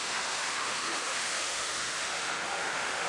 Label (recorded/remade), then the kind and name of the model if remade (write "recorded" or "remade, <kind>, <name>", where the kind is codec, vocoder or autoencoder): remade, autoencoder, DAC-VAE